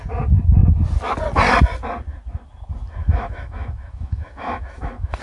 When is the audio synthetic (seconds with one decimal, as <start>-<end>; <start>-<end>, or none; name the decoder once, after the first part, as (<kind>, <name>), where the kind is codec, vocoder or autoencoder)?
3.0-5.2 (autoencoder, DAC-VAE)